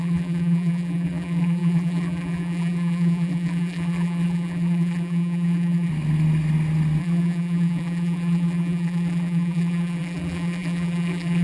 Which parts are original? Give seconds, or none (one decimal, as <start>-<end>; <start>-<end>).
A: 5.9-7.0